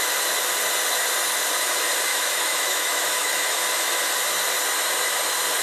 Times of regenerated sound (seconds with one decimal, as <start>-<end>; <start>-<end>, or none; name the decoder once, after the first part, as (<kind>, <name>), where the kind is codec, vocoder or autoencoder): 2.1-4.0 (autoencoder, DAC-VAE)